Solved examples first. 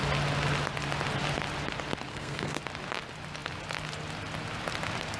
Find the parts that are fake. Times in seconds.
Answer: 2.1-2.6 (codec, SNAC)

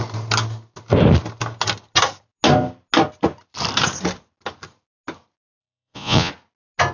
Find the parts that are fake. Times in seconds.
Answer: 5.6-6.3 (vocoder, Vocos)

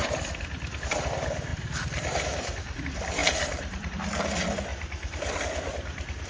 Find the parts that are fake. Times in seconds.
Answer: 1.5-2.8 (vocoder, BigVGAN v2); 3.2-3.9; 4.7-5.3

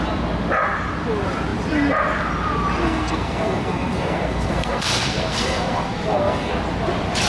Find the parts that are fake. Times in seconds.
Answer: 2.8-6.5 (codec, SNAC)

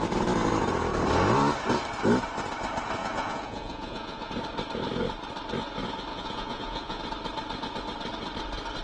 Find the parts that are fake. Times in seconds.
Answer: 3.0-4.3 (vocoder, Vocos); 6.1-7.0